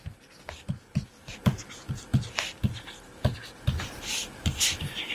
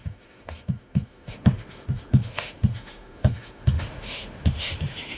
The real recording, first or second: first